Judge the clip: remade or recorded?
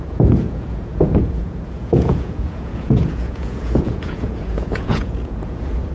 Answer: remade